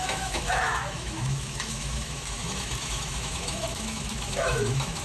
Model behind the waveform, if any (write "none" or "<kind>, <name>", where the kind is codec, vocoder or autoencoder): autoencoder, DAC-VAE